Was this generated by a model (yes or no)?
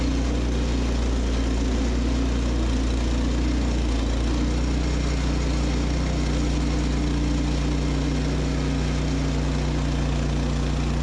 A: no